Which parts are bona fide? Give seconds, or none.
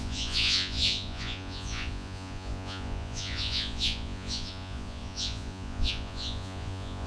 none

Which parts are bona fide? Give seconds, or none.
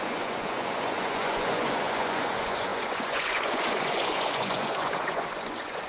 none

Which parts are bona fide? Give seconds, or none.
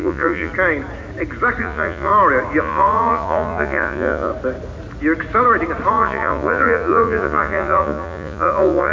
0.5-1.6; 2.1-2.6; 4.3-5.9